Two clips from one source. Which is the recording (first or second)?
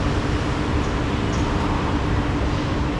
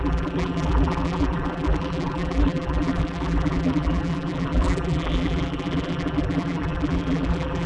first